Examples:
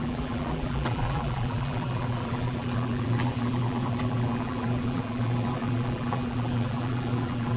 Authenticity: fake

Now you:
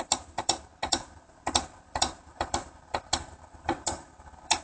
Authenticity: fake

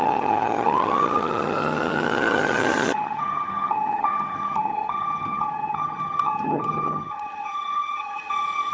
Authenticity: fake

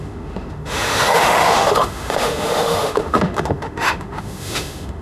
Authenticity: fake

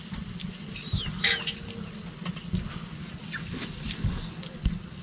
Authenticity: real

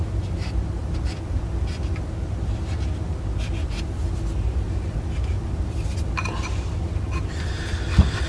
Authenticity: real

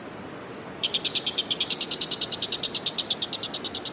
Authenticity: real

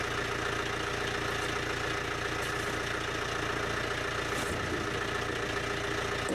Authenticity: real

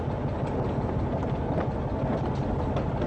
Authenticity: real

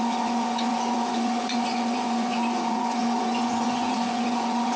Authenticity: fake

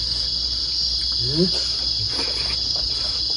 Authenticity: real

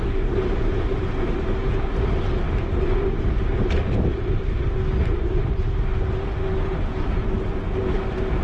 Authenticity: real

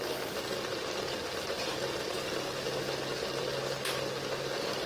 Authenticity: real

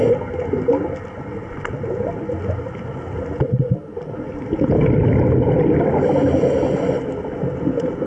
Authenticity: real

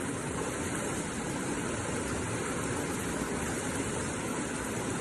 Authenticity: real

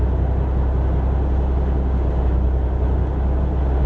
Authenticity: real